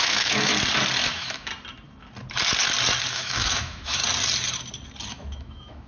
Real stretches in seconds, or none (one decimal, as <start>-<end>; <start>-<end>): 0.5-1.1; 1.5-3.1; 4.0-5.1